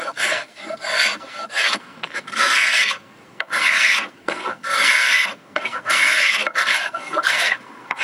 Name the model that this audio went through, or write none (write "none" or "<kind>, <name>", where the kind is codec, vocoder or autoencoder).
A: codec, SNAC